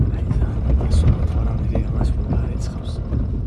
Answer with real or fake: real